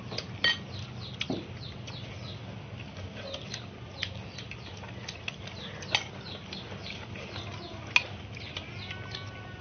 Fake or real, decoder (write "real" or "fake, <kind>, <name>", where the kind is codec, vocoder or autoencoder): real